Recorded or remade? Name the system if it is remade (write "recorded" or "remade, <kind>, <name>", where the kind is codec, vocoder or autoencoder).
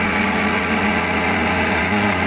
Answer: remade, vocoder, Vocos